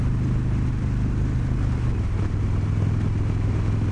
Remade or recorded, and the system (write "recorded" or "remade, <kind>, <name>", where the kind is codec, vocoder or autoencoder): recorded